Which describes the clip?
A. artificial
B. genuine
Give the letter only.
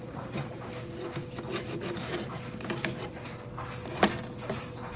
B